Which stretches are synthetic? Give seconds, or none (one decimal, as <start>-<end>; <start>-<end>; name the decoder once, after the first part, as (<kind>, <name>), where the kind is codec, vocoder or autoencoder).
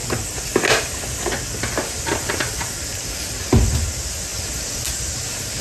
2.9-3.8 (vocoder, BigVGAN v2); 4.3-4.9